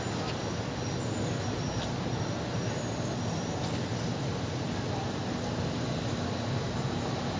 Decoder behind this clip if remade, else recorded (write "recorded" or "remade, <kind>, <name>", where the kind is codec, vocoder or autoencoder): recorded